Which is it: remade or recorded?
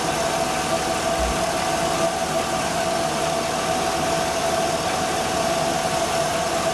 recorded